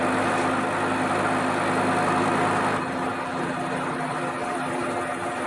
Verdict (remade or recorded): recorded